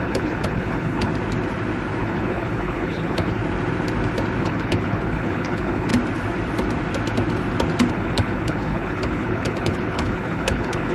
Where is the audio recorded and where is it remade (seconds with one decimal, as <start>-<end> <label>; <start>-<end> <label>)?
0.0-1.1 remade; 1.1-2.0 recorded; 2.0-3.4 remade; 3.4-4.4 recorded; 4.4-5.9 remade; 5.9-7.9 recorded; 7.9-10.9 remade